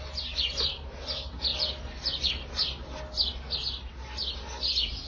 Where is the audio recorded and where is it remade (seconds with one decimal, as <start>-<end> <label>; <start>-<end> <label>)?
0.0-5.1 recorded